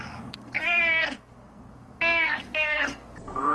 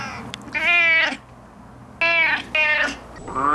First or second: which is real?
second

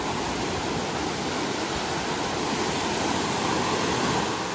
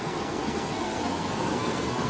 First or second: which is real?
first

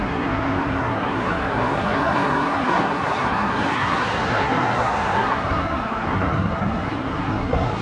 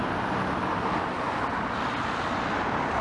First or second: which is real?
second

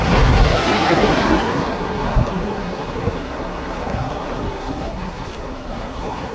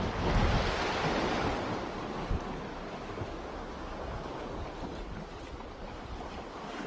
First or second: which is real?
second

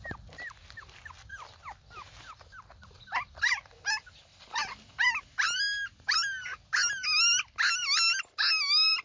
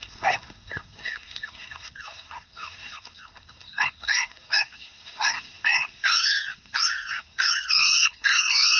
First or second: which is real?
first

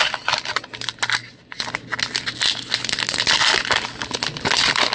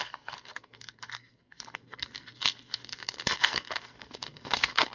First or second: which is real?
first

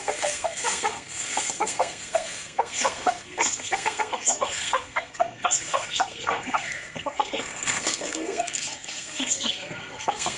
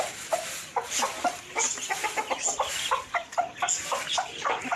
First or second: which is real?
second